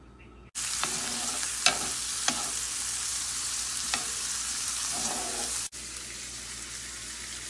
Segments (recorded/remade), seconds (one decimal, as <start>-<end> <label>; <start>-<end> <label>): 0.0-3.1 recorded; 3.1-5.4 remade; 5.4-7.5 recorded